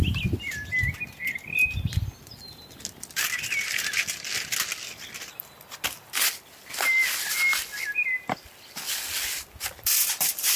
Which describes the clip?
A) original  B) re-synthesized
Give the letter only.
A